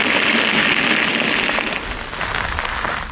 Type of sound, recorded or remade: recorded